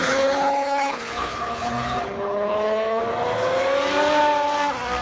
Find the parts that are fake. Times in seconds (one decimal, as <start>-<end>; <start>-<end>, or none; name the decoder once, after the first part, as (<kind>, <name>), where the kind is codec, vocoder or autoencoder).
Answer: 0.0-3.0 (codec, HILCodec)